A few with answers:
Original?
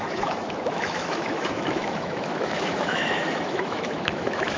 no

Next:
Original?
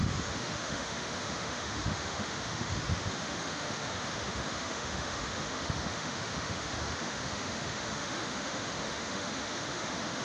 no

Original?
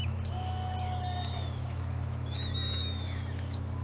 no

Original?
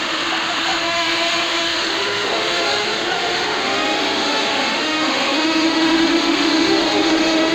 no